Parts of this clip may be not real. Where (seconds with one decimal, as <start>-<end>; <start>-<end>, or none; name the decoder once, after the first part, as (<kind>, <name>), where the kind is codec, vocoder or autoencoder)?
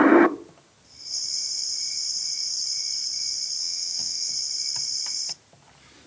3.6-4.3 (vocoder, WaveNeXt)